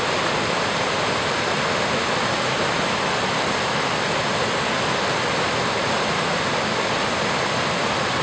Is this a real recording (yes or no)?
yes